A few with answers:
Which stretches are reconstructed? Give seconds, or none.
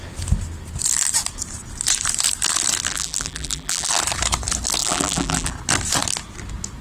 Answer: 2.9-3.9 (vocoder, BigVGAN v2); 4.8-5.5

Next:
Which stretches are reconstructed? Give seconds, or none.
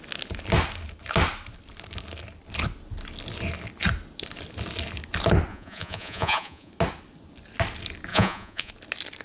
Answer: 5.5-6.7 (vocoder, Vocos); 8.1-8.7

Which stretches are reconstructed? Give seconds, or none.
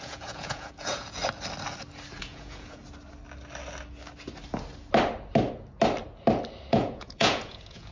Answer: 0.0-1.2 (vocoder, Vocos); 2.2-2.8; 6.7-7.9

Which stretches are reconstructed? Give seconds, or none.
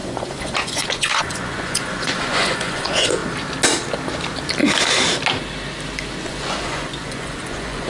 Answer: 0.0-3.2 (vocoder, Vocos); 6.2-7.9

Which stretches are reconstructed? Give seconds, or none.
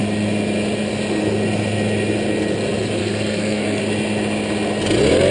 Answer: 3.0-3.8 (codec, SNAC)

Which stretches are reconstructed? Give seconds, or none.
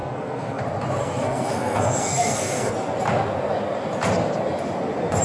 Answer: 0.0-0.6 (codec, SNAC); 1.0-2.7